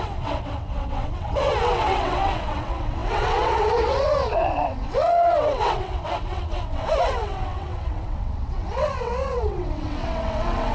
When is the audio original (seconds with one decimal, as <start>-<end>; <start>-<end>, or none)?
none